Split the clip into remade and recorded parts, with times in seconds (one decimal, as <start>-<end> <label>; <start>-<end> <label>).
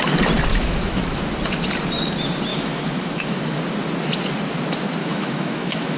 0.0-0.5 recorded; 0.5-1.2 remade; 1.2-2.5 recorded; 2.5-3.4 remade; 3.4-5.0 recorded; 5.0-6.0 remade